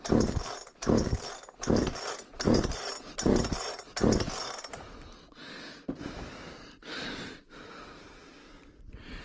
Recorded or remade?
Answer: recorded